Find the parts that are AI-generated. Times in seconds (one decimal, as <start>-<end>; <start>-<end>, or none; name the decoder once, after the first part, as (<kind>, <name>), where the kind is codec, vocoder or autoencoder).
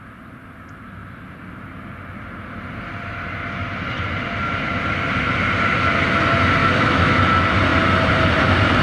6.6-7.2 (autoencoder, DAC-VAE)